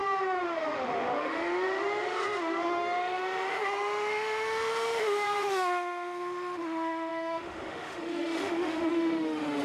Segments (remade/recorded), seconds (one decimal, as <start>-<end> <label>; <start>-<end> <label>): 0.0-9.6 remade